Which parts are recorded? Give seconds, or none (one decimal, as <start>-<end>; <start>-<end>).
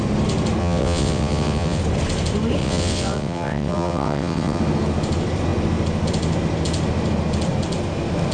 0.0-0.6; 1.8-2.6; 4.6-8.3